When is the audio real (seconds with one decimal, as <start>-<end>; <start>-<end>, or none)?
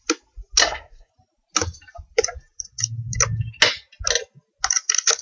0.0-0.6; 1.1-5.2